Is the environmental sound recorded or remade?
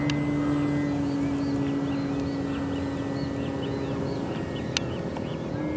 recorded